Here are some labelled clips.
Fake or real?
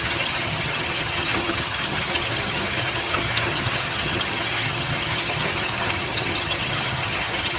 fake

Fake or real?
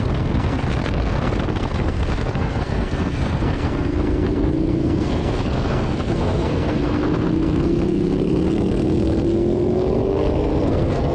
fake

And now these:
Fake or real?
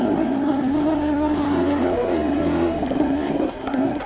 fake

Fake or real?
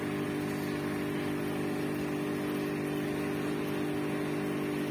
real